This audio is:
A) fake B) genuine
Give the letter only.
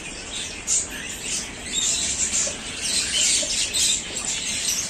B